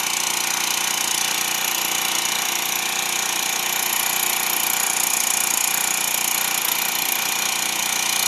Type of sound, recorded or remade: recorded